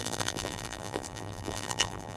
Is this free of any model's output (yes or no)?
no